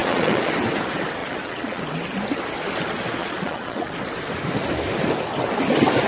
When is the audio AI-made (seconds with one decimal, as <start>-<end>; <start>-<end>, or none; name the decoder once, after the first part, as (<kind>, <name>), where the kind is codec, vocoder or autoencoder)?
0.0-0.5 (vocoder, Vocos); 1.2-1.8; 3.2-3.9